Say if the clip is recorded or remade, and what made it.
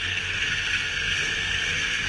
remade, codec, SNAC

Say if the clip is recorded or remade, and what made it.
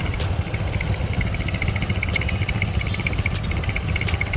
recorded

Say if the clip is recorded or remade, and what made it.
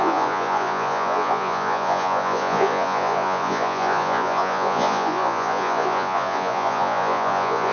remade, vocoder, Vocos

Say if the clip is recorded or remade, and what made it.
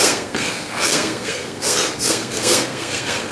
remade, codec, SNAC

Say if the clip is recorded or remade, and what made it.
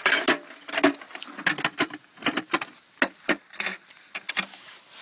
recorded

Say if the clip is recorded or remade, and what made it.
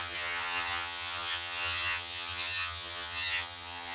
remade, vocoder, HiFi-GAN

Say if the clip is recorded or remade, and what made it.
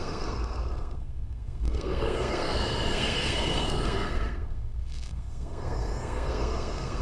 remade, codec, SNAC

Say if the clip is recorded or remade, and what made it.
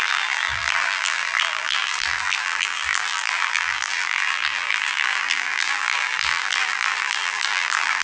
remade, vocoder, BigVGAN v2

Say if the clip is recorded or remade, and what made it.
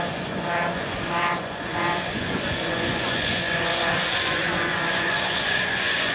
remade, vocoder, Vocos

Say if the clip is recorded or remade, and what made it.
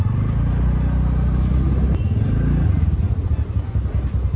recorded